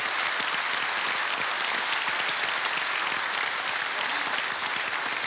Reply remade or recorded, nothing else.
recorded